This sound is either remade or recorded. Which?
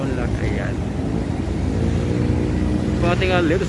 recorded